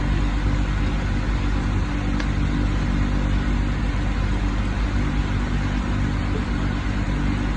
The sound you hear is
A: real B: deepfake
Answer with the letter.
A